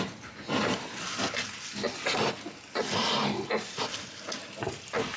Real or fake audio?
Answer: real